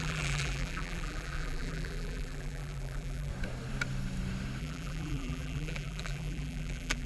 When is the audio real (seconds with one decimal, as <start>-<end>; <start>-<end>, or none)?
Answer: 3.3-4.6